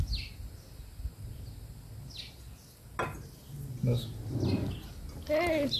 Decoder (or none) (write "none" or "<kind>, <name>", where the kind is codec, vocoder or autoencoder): none